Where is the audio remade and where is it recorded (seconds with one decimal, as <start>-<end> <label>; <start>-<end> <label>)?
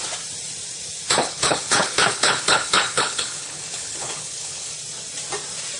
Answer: 0.0-1.2 recorded; 1.2-4.7 remade; 4.7-5.8 recorded